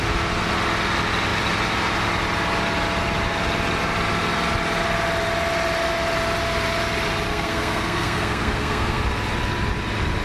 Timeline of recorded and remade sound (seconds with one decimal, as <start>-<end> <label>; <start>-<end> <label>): 0.0-7.3 recorded; 7.3-9.0 remade; 9.0-10.2 recorded